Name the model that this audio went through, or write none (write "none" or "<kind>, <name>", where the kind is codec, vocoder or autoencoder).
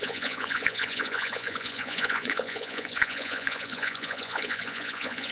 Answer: vocoder, Vocos